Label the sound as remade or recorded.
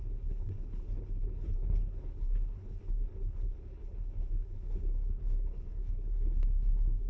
remade